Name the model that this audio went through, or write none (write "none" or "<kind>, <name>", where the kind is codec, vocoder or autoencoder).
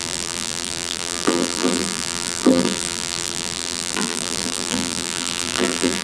vocoder, BigVGAN v2